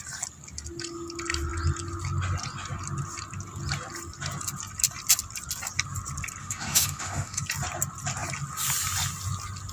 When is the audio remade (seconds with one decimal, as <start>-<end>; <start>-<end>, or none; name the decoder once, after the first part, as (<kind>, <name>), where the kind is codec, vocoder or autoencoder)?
6.4-7.4 (autoencoder, DAC-VAE)